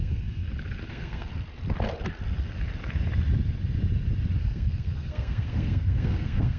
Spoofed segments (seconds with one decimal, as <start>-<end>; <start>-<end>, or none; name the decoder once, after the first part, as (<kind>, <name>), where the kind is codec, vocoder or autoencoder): 0.0-0.4 (codec, SNAC); 0.9-1.3; 4.4-6.6